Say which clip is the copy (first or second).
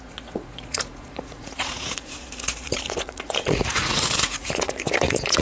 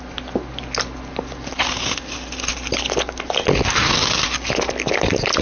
first